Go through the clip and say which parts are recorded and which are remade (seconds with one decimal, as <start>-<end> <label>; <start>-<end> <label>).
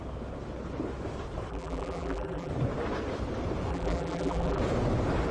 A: 0.0-1.5 recorded; 1.5-2.5 remade; 2.5-3.7 recorded; 3.7-4.6 remade; 4.6-5.3 recorded